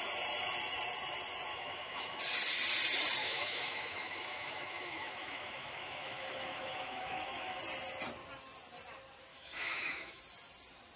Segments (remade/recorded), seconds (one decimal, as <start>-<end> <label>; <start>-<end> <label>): 0.0-1.5 recorded; 1.5-2.2 remade; 2.2-3.2 recorded; 3.2-7.6 remade; 7.6-9.3 recorded; 9.3-10.2 remade; 10.2-11.0 recorded